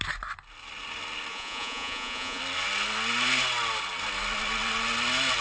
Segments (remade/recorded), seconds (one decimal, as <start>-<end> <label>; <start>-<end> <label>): 0.0-1.3 recorded; 1.3-2.4 remade; 2.4-5.4 recorded